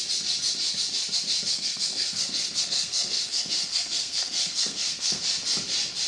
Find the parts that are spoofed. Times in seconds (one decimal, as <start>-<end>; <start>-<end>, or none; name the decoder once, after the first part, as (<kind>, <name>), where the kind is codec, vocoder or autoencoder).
1.5-5.2 (codec, SNAC)